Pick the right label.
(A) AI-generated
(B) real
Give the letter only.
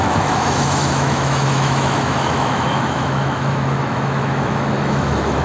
A